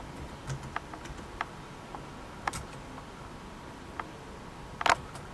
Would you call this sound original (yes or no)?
yes